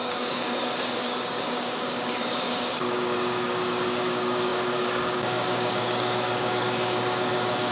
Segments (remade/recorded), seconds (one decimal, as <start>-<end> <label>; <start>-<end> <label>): 0.0-7.7 remade